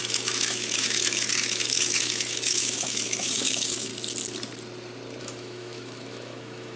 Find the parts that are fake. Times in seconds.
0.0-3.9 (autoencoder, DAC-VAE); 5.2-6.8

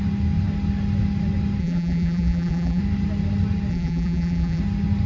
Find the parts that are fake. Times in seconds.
1.6-2.8 (vocoder, BigVGAN v2); 3.7-4.6

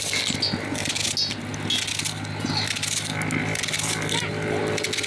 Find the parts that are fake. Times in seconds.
none

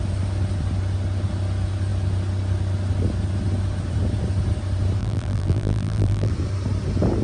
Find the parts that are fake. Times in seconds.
5.0-6.3 (vocoder, BigVGAN v2)

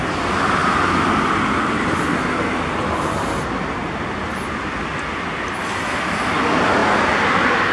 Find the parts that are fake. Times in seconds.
none

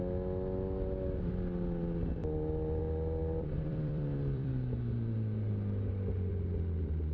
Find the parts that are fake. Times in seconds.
3.2-4.5 (vocoder, BigVGAN v2)